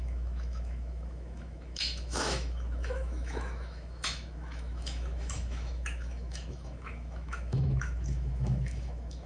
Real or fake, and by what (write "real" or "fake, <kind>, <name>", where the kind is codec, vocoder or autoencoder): fake, autoencoder, DAC-VAE